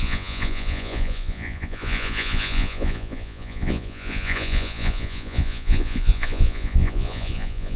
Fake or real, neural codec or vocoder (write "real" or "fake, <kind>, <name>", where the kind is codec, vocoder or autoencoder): fake, vocoder, Vocos